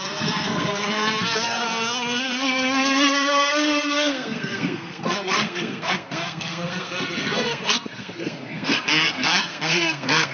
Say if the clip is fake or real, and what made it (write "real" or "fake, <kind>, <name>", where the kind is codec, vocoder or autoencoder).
fake, codec, SNAC